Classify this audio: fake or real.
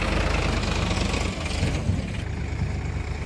real